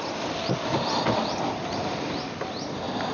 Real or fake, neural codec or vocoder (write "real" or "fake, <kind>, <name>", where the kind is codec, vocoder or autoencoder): real